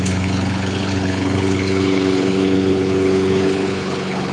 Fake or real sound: fake